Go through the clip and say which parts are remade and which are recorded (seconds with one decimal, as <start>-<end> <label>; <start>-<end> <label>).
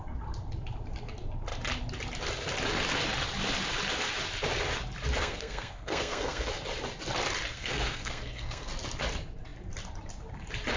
0.0-5.2 recorded; 5.2-6.5 remade; 6.5-7.5 recorded; 7.5-8.7 remade; 8.7-10.8 recorded